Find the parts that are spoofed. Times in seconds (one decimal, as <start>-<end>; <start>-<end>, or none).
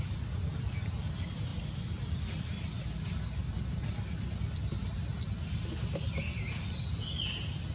none